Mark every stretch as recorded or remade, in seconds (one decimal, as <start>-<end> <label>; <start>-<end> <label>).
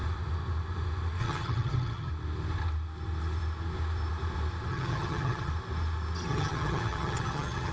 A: 0.0-1.2 recorded; 1.2-2.1 remade; 2.1-4.7 recorded; 4.7-5.5 remade; 5.5-6.3 recorded; 6.3-7.7 remade